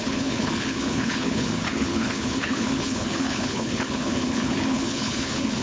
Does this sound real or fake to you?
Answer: fake